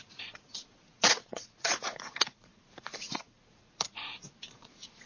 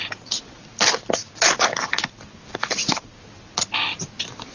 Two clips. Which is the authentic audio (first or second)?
second